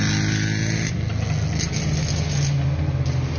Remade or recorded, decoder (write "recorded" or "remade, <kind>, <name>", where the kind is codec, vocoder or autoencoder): recorded